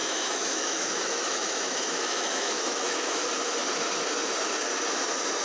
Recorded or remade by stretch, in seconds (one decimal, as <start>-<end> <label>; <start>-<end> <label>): 0.0-3.2 remade; 3.2-5.4 recorded